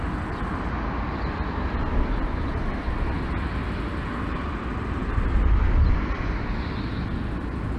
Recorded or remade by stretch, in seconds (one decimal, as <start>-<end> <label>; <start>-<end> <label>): 0.0-7.8 recorded